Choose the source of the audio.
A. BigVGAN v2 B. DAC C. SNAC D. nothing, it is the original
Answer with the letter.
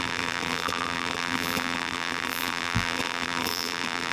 A